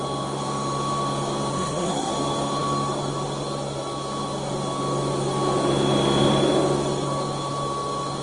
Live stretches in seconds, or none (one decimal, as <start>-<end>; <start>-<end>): 0.0-1.5; 2.1-8.2